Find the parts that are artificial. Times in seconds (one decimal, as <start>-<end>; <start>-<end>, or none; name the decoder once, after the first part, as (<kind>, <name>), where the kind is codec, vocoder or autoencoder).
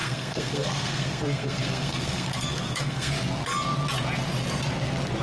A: 0.0-3.1 (codec, SNAC)